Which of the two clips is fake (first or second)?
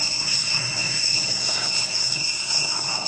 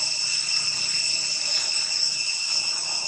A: first